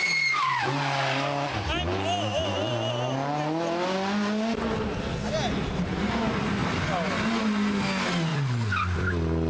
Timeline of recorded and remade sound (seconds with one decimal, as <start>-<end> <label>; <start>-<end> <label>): 0.0-8.3 recorded; 8.3-9.1 remade; 9.1-9.5 recorded